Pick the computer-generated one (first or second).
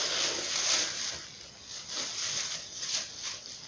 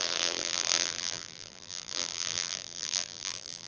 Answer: second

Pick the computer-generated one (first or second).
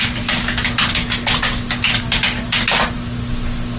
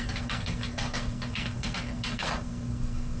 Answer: second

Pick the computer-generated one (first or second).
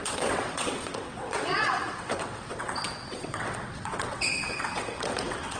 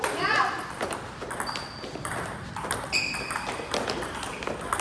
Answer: first